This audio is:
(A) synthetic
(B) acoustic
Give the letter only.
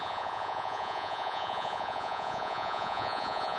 A